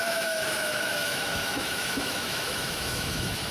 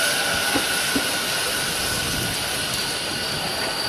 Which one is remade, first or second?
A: first